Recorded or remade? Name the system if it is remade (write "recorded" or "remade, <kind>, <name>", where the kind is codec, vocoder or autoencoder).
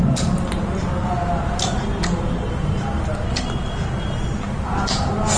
recorded